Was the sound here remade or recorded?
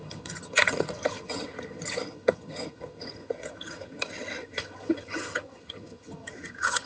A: remade